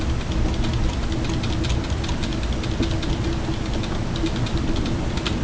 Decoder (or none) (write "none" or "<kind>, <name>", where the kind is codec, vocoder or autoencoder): none